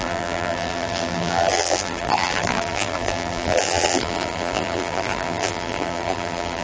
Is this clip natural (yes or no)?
no